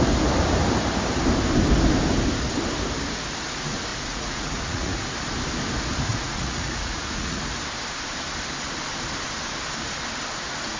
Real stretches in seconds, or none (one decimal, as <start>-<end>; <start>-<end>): 0.0-3.9; 5.0-6.1; 7.4-10.8